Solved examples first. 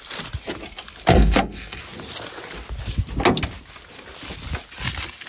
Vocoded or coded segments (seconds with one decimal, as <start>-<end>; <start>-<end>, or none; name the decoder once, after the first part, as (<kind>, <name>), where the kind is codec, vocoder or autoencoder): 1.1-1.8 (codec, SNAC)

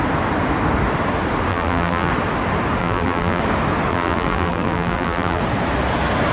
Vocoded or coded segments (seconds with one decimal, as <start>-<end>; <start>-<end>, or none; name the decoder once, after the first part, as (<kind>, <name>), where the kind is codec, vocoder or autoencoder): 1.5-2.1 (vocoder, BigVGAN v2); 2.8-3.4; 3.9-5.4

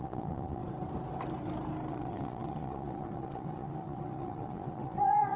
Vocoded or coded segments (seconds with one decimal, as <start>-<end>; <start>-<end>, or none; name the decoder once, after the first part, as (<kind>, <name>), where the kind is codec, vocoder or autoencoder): 0.0-0.6 (vocoder, Vocos); 1.9-5.4

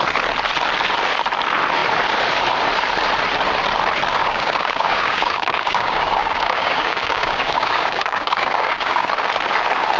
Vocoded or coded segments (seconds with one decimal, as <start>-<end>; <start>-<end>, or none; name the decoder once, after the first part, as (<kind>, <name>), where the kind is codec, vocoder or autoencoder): 4.2-9.1 (codec, DAC)